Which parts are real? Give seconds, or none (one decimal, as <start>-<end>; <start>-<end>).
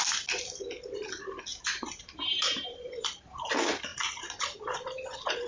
0.0-1.5; 3.1-3.9